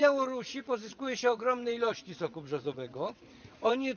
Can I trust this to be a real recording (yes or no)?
no